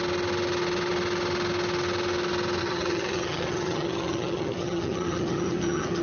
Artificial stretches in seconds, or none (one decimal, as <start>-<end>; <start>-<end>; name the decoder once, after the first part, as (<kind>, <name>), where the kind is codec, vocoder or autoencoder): 2.6-6.0 (vocoder, HiFi-GAN)